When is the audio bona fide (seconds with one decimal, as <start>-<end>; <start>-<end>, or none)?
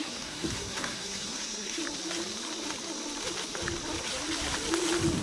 1.8-5.2